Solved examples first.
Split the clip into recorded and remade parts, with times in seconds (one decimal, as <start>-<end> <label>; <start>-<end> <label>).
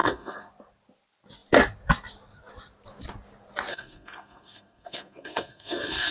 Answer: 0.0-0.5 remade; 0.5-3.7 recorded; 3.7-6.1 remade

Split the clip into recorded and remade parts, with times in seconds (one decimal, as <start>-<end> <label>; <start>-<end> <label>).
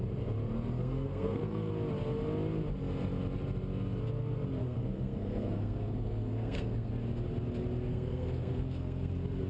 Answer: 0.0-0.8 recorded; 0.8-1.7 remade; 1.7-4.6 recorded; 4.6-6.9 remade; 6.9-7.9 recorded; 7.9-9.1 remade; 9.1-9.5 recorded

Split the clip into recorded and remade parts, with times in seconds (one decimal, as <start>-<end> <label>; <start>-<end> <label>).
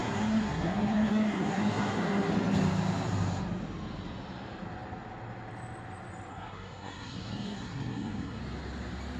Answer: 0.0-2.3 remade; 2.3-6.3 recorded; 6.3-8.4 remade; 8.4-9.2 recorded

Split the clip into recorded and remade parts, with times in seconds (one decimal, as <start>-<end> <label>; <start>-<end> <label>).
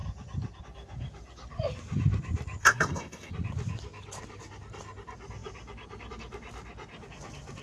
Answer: 0.0-2.6 recorded; 2.6-3.3 remade; 3.3-7.6 recorded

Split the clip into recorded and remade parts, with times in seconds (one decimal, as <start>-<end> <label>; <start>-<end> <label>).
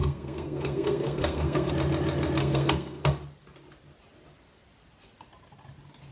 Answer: 0.0-1.7 remade; 1.7-2.4 recorded; 2.4-3.0 remade; 3.0-6.1 recorded